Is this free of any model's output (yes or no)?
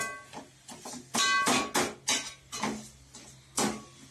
yes